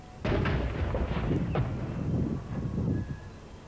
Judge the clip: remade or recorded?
recorded